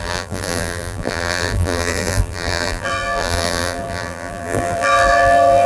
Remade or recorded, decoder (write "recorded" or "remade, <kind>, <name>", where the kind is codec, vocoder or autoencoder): remade, vocoder, BigVGAN v2